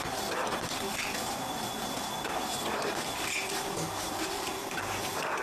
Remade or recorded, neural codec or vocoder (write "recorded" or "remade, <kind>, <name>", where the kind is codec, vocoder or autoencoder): remade, vocoder, BigVGAN v2